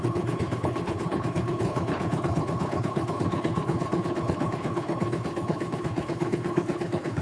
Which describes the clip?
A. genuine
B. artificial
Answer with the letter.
B